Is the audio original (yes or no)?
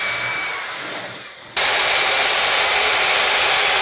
no